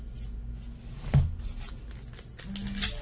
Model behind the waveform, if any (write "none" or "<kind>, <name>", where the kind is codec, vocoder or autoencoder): none